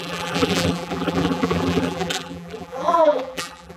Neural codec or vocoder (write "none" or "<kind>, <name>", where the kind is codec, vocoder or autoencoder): vocoder, BigVGAN v2